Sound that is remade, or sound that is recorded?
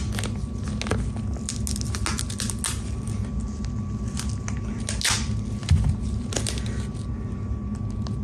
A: recorded